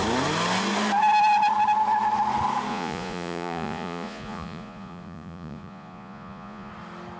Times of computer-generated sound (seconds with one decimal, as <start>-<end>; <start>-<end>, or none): 2.7-6.7